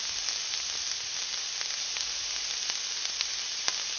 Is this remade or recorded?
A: recorded